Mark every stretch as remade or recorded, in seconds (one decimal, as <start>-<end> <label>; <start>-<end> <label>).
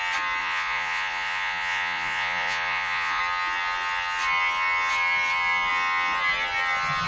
0.0-0.4 recorded; 0.4-3.2 remade; 3.2-7.1 recorded